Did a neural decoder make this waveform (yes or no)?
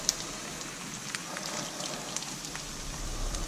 no